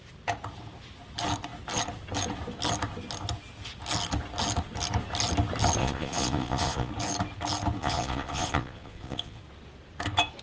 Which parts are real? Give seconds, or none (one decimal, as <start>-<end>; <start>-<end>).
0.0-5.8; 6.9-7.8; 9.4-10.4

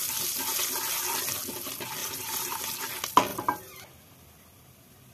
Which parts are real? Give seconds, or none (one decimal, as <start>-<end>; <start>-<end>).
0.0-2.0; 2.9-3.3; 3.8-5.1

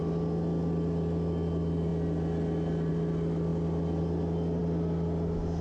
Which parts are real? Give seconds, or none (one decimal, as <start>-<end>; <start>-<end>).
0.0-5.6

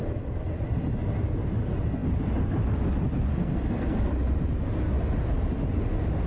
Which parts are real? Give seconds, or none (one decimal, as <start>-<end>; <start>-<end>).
0.0-3.3; 4.1-6.3